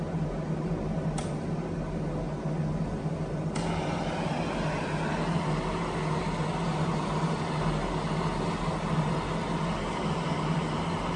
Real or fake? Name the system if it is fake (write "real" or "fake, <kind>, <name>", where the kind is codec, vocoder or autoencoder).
real